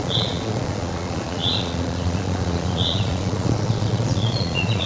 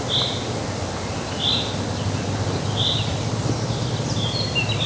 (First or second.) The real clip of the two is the second